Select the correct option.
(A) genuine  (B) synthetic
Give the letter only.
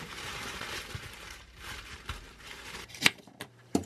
B